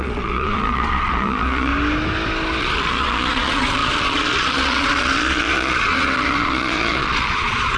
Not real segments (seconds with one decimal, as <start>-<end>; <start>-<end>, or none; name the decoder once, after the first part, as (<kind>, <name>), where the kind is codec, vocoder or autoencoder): 0.0-1.7 (vocoder, Vocos); 2.6-7.8